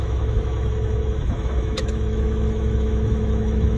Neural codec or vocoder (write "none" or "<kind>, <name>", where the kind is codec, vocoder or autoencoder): autoencoder, DAC-VAE